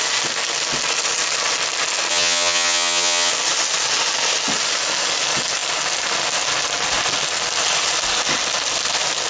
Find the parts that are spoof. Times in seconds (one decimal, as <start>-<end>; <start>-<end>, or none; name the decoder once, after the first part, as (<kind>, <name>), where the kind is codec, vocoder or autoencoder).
2.1-3.3 (vocoder, HiFi-GAN)